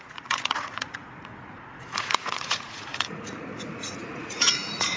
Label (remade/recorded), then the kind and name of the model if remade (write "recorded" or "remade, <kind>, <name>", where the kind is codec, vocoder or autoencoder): remade, vocoder, Vocos